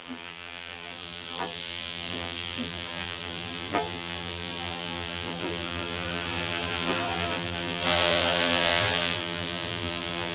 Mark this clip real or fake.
fake